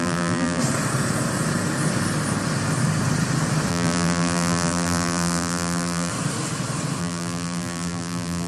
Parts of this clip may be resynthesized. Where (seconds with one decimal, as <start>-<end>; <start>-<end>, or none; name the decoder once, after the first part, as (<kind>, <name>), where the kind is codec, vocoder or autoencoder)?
0.0-0.6 (vocoder, BigVGAN v2); 3.7-6.1; 7.0-8.5